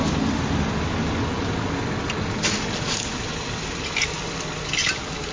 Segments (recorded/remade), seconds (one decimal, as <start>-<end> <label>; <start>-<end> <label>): 0.0-5.3 recorded